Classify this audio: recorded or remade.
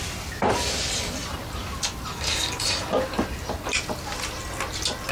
recorded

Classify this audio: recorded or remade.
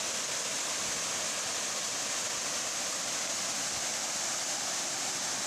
recorded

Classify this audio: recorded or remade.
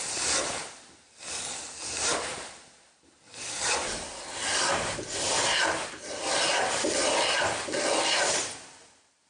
recorded